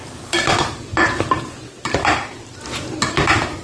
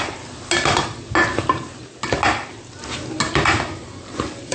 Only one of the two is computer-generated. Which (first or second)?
first